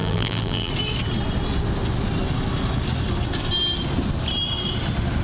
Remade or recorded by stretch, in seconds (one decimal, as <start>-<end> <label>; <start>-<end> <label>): 0.0-0.7 remade; 0.7-5.2 recorded